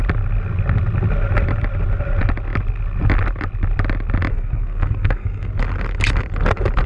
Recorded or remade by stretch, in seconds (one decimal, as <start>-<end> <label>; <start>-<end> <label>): 0.0-4.3 recorded; 4.3-5.5 remade; 5.5-6.9 recorded